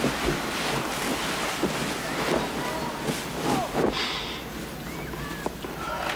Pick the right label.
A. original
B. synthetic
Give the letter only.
A